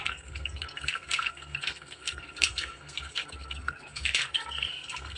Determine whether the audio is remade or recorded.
remade